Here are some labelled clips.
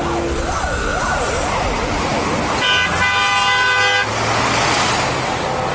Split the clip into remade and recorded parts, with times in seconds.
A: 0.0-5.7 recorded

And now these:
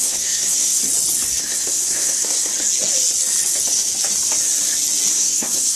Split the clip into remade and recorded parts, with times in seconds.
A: 0.0-0.8 remade; 0.8-1.4 recorded; 1.4-2.5 remade; 2.5-5.1 recorded; 5.1-5.8 remade

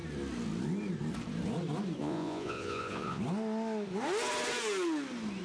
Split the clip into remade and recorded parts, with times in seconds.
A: 0.0-2.0 recorded; 2.0-3.2 remade; 3.2-5.4 recorded

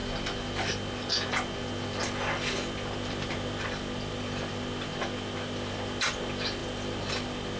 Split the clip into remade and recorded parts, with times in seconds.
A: 0.0-7.6 recorded

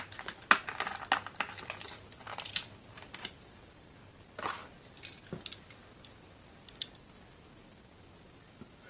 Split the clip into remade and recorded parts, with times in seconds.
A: 0.0-8.9 recorded

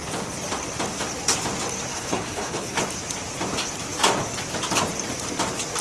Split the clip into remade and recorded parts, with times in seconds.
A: 0.0-1.9 recorded; 1.9-2.8 remade; 2.8-5.8 recorded